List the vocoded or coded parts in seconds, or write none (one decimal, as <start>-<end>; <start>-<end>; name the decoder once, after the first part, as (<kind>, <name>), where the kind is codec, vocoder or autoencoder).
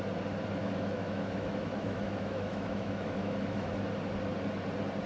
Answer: 0.6-3.7 (autoencoder, DAC-VAE)